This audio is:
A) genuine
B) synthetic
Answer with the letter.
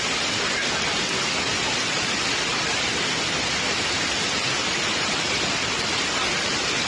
A